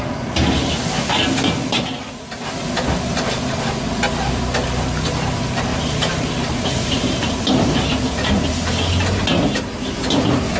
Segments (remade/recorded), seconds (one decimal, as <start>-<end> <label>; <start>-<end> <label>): 0.0-5.7 recorded; 5.7-7.4 remade; 7.4-10.6 recorded